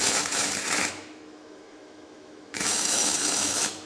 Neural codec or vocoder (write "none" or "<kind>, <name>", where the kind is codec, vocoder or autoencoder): autoencoder, DAC-VAE